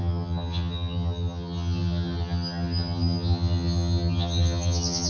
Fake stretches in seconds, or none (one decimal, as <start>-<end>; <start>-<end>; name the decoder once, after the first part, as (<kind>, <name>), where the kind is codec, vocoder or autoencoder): 0.0-5.1 (vocoder, HiFi-GAN)